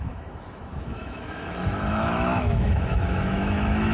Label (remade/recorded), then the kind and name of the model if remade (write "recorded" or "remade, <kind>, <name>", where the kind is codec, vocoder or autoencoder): remade, autoencoder, DAC-VAE